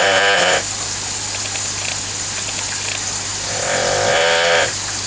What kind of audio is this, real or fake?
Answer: real